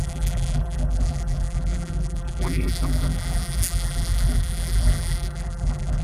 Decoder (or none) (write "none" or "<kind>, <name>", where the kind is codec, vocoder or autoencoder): vocoder, BigVGAN v2